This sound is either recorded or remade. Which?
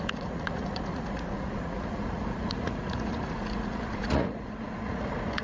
remade